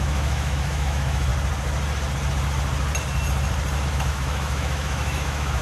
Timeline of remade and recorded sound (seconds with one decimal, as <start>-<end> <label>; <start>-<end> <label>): 0.0-1.3 remade; 1.3-3.9 recorded; 3.9-5.6 remade